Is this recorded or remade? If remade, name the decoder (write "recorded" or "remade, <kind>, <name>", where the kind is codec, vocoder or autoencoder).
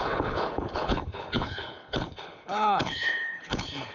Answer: remade, codec, HILCodec